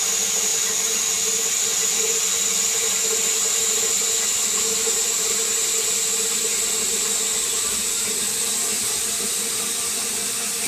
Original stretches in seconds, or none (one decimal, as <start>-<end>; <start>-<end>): 0.0-10.7

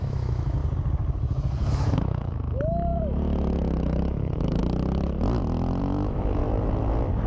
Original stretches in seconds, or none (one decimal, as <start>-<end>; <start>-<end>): 0.6-1.7; 4.6-5.8; 6.4-7.3

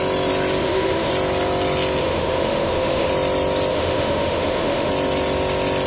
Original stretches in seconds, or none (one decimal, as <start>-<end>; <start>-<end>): 0.0-0.6; 1.1-2.0; 3.1-3.7; 4.9-5.9